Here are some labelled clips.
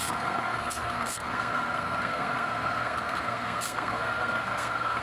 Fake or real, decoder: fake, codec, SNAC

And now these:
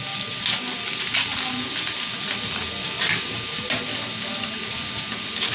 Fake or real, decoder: real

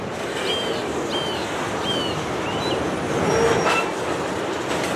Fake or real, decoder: real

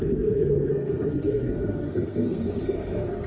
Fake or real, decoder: fake, codec, SNAC